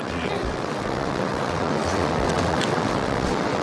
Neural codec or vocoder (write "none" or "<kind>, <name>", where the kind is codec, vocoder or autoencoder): vocoder, WaveNeXt